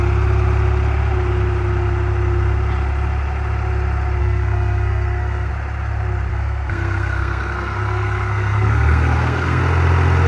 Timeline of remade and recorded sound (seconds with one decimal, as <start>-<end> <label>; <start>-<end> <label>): 0.0-4.2 recorded; 4.2-5.5 remade; 5.5-6.3 recorded; 6.3-9.6 remade; 9.6-10.3 recorded